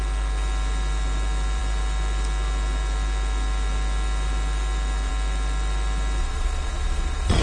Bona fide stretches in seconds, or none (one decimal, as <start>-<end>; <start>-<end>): 0.0-6.2